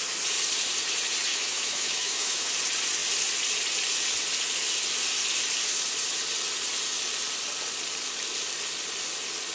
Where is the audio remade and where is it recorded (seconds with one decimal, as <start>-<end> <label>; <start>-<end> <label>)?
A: 0.0-1.3 recorded; 1.3-2.5 remade; 2.5-9.5 recorded